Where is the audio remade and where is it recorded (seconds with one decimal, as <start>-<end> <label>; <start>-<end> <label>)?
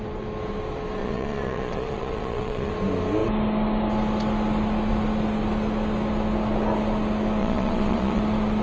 0.0-1.0 recorded; 1.0-2.7 remade; 2.7-7.4 recorded; 7.4-8.2 remade; 8.2-8.6 recorded